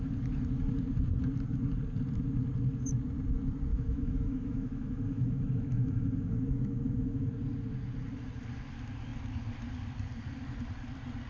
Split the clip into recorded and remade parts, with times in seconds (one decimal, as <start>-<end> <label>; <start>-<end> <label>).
0.0-3.7 recorded; 3.7-7.2 remade; 7.2-11.3 recorded